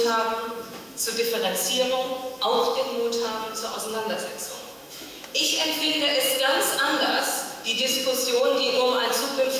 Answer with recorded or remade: remade